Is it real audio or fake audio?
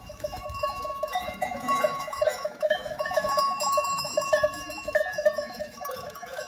fake